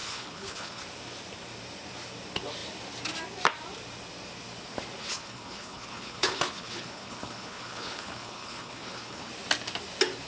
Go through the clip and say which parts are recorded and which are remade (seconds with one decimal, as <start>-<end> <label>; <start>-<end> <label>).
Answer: 0.0-0.8 remade; 0.8-5.0 recorded; 5.0-9.3 remade; 9.3-10.3 recorded